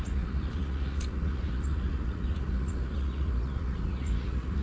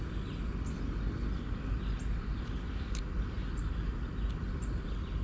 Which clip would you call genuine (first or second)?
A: second